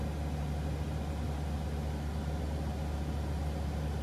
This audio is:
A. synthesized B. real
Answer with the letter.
B